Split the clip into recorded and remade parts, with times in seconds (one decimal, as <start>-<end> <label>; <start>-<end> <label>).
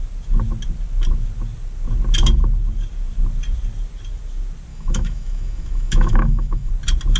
0.0-4.7 recorded; 4.7-6.7 remade; 6.7-7.2 recorded